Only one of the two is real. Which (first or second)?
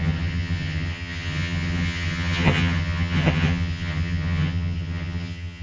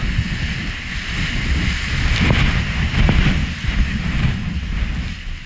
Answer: second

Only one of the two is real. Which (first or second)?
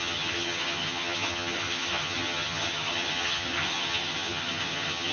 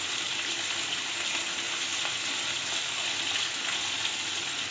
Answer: second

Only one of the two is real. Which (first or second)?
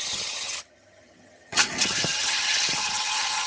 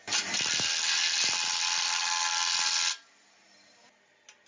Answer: second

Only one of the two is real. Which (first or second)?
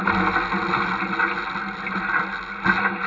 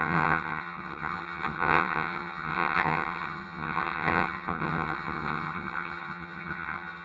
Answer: first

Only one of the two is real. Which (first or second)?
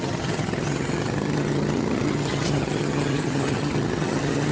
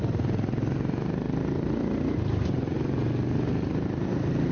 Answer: second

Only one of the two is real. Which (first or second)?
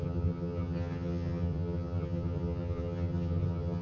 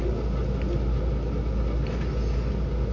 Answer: second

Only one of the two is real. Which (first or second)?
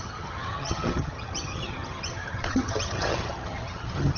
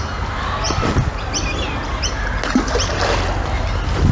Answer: second